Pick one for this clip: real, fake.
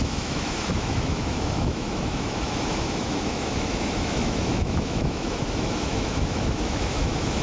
fake